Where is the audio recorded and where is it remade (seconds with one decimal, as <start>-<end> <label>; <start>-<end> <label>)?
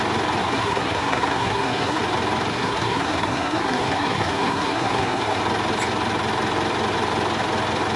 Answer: 0.0-0.4 recorded; 0.4-2.0 remade; 2.0-2.5 recorded; 2.5-5.4 remade; 5.4-8.0 recorded